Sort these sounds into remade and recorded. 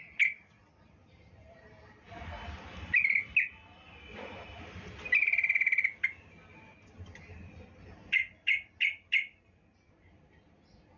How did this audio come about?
recorded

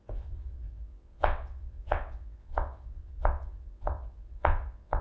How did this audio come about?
remade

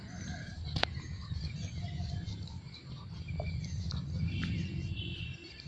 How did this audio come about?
recorded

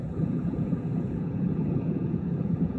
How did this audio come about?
remade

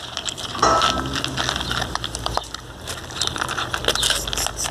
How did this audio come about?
recorded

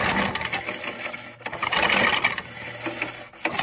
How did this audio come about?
recorded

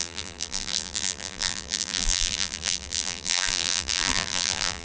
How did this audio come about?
remade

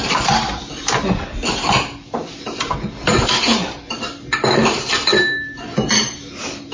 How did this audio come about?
remade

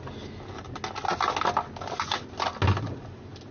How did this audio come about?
recorded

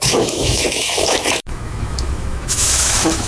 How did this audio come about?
remade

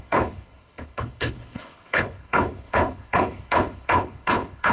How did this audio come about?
remade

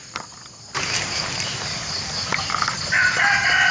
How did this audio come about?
recorded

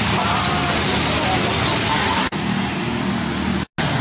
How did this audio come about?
recorded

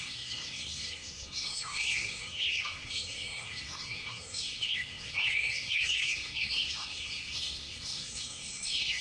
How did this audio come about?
remade